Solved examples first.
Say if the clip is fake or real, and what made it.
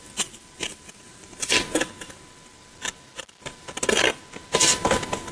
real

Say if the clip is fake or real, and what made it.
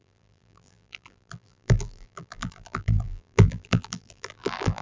fake, vocoder, BigVGAN v2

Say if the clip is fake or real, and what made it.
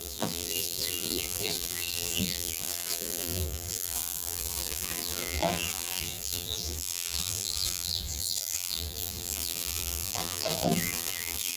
fake, vocoder, BigVGAN v2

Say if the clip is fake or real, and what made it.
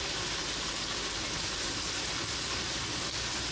real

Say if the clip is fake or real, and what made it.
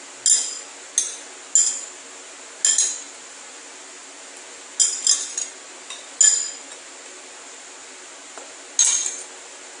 real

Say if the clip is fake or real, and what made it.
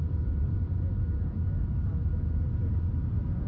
fake, vocoder, BigVGAN v2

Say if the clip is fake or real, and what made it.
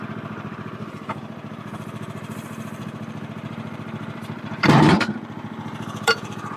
fake, vocoder, BigVGAN v2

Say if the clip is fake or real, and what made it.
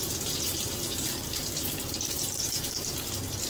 fake, vocoder, BigVGAN v2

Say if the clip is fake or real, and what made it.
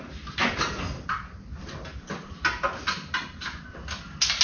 real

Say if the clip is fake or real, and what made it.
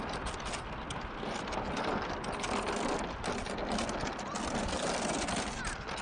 real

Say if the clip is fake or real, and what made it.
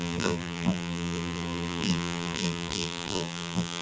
fake, vocoder, BigVGAN v2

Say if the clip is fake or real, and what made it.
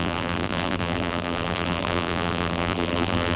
fake, vocoder, BigVGAN v2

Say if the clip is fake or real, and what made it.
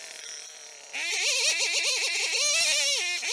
real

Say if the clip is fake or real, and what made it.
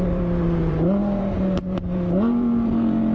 fake, vocoder, BigVGAN v2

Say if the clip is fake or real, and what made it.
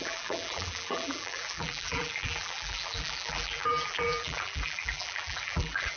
fake, vocoder, BigVGAN v2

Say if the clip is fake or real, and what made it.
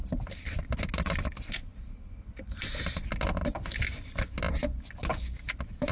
real